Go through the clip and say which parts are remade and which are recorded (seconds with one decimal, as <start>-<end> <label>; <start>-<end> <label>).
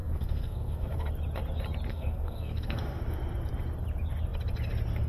0.0-1.1 remade; 1.1-1.9 recorded; 1.9-3.0 remade; 3.0-5.1 recorded